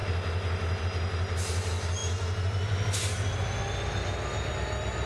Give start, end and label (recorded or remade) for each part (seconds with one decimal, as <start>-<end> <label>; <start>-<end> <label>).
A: 0.0-5.1 recorded